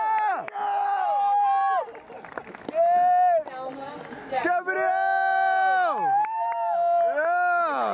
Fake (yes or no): no